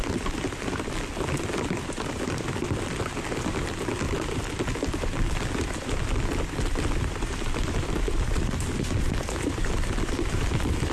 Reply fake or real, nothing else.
real